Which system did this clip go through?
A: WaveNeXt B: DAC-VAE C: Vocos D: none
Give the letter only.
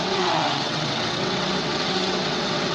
A